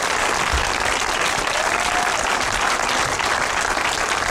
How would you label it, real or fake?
real